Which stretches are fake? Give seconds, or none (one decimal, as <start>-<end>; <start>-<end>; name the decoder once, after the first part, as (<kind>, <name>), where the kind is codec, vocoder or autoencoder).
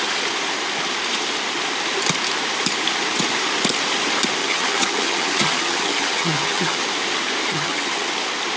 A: 4.4-6.8 (vocoder, HiFi-GAN); 7.5-8.1